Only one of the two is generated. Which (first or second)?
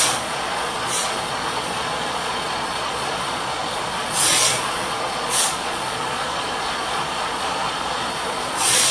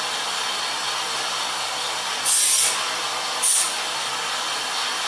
first